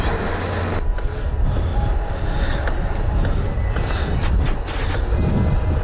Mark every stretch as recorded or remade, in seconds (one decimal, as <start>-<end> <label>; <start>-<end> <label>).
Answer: 0.0-5.8 recorded